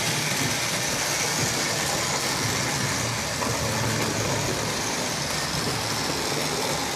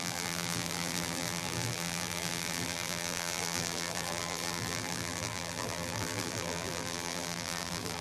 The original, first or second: first